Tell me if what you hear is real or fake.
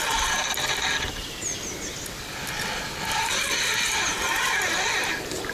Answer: real